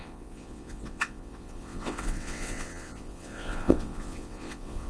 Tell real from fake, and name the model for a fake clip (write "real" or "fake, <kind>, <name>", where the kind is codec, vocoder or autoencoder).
fake, vocoder, WaveNeXt